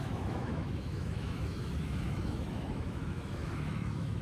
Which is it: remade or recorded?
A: remade